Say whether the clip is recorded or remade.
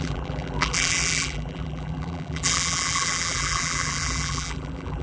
remade